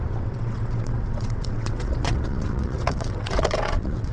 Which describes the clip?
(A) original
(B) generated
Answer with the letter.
B